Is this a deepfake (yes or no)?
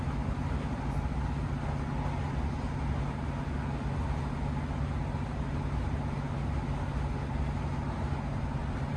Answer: no